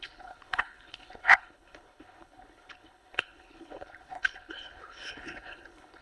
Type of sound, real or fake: fake